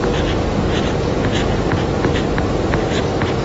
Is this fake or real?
real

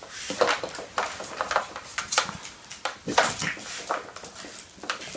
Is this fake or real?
real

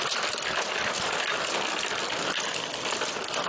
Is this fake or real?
real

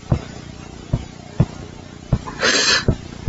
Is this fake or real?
real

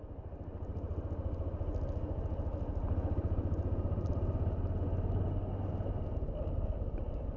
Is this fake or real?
real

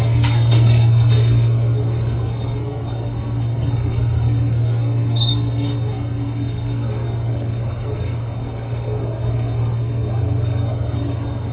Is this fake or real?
fake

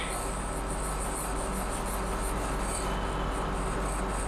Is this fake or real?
real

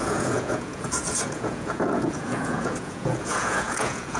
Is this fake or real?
fake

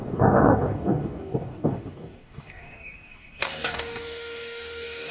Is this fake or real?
fake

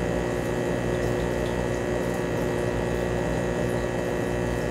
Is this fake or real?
real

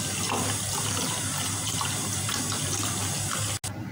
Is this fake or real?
real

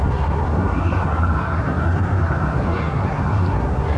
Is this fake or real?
fake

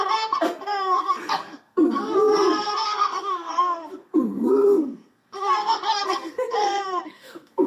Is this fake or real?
fake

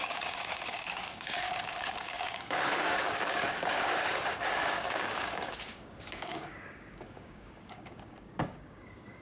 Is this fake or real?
fake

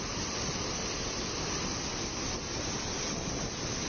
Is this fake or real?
real